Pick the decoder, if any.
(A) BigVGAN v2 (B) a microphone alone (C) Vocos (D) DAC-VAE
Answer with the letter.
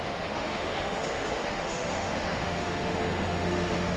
D